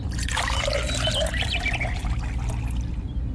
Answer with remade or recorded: recorded